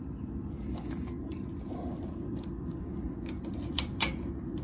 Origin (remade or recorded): recorded